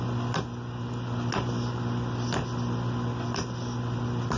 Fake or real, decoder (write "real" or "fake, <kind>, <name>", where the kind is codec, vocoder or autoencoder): real